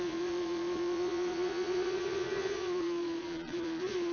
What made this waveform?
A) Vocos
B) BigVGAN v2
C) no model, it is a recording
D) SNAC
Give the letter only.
A